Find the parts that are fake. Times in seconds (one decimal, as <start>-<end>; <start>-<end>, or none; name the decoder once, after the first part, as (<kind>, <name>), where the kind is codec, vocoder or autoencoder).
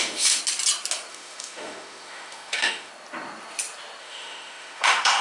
0.0-0.4 (autoencoder, DAC-VAE); 1.1-2.9; 4.0-5.2